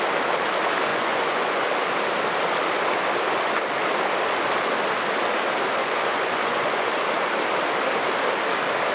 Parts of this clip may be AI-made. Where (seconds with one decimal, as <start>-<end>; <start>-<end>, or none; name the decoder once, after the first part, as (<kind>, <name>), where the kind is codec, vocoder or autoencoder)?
0.9-1.6 (vocoder, Vocos); 5.8-6.9

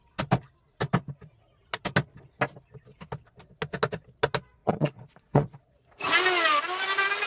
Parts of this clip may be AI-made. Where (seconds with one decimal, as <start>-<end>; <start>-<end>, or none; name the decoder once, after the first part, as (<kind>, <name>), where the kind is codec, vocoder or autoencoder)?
4.6-5.9 (vocoder, Vocos)

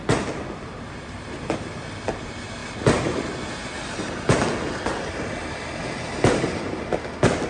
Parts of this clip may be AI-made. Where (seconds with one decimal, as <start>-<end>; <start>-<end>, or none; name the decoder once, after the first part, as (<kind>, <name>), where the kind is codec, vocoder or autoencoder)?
none